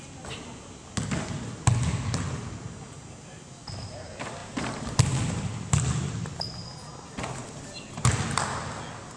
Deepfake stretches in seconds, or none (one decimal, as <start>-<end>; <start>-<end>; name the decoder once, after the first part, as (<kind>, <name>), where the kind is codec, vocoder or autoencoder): 4.4-5.8 (vocoder, BigVGAN v2); 7.4-8.1